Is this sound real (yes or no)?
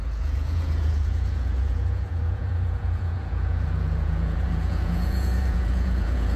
no